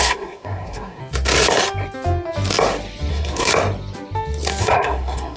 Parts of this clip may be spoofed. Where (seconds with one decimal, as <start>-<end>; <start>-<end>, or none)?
0.0-1.0; 3.1-3.5; 4.6-5.4